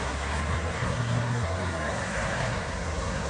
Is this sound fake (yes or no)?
yes